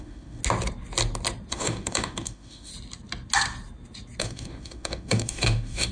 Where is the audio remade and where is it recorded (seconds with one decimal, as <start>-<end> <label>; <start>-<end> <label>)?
0.0-0.4 remade; 0.4-1.5 recorded; 1.5-2.7 remade; 2.7-4.2 recorded; 4.2-5.9 remade

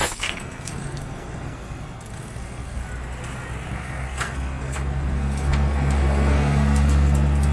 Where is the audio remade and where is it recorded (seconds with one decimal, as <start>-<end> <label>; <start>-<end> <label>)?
0.0-2.8 remade; 2.8-3.7 recorded; 3.7-7.5 remade